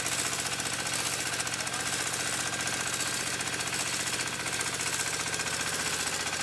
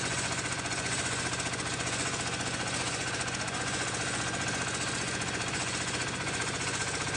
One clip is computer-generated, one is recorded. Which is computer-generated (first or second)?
second